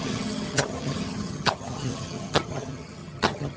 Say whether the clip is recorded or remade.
remade